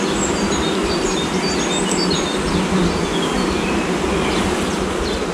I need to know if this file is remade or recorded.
recorded